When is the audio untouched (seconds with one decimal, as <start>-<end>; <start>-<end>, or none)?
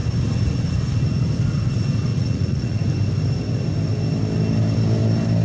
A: 0.0-2.1; 2.8-5.4